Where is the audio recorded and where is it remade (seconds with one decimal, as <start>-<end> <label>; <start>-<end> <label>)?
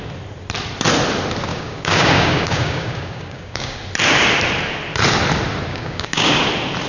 0.0-1.5 recorded; 1.5-3.8 remade; 3.8-5.7 recorded; 5.7-6.5 remade; 6.5-6.9 recorded